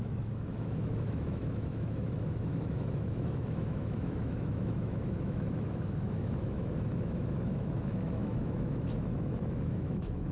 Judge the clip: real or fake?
fake